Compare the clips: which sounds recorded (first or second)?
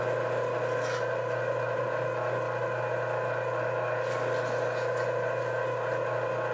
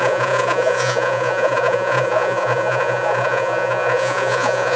first